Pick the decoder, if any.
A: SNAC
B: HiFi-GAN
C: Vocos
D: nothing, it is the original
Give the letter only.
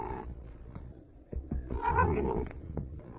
C